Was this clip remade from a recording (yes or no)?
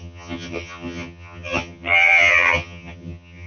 yes